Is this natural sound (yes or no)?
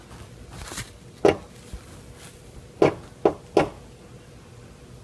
yes